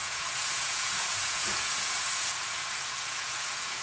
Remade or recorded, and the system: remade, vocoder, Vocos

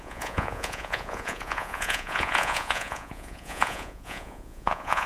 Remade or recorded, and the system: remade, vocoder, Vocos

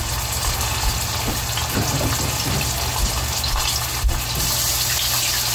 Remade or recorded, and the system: recorded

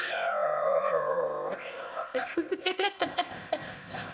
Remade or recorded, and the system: remade, codec, ZipCodec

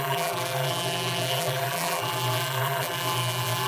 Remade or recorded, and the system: remade, vocoder, BigVGAN v2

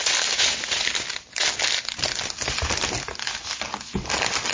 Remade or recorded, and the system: recorded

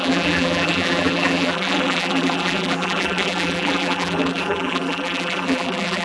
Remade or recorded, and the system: remade, vocoder, BigVGAN v2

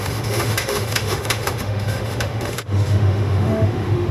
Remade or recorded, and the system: remade, autoencoder, DAC-VAE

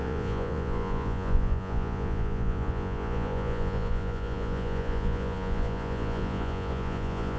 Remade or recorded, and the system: remade, vocoder, Vocos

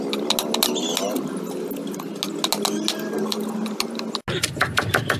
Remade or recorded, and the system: recorded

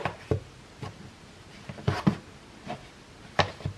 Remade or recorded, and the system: recorded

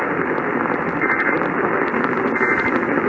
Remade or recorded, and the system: recorded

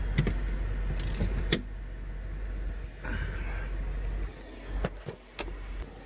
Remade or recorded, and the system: recorded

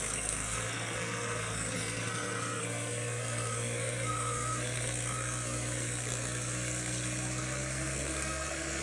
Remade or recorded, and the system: remade, codec, SNAC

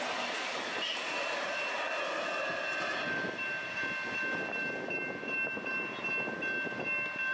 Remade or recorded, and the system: recorded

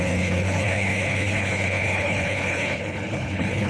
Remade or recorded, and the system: remade, codec, HILCodec